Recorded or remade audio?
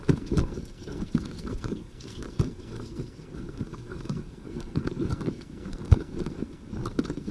remade